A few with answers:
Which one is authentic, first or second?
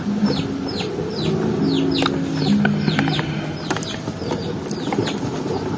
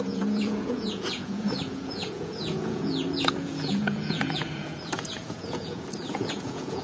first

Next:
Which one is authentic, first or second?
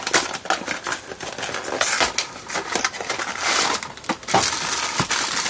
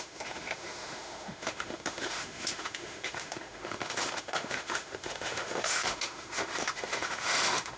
first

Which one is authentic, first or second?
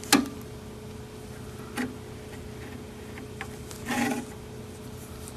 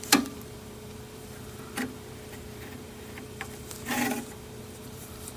first